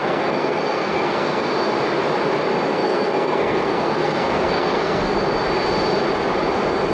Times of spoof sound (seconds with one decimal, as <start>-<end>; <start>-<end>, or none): 0.0-1.5; 2.7-5.2